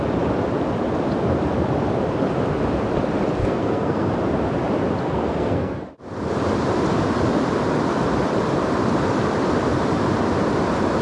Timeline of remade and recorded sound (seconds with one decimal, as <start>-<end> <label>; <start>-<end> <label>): 0.0-3.4 recorded; 3.4-4.1 remade; 4.1-5.0 recorded; 5.0-5.9 remade; 5.9-11.0 recorded